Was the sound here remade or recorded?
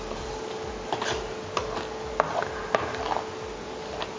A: recorded